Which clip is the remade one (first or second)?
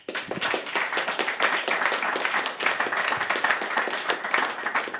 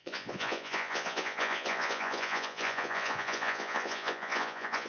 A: second